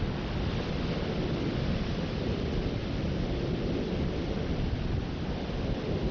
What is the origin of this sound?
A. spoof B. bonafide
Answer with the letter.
B